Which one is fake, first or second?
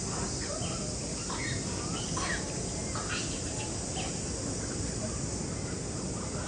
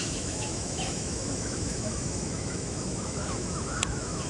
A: second